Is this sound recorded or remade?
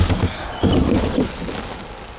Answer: recorded